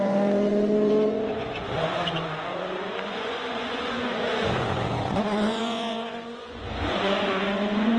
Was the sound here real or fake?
fake